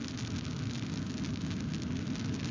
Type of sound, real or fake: real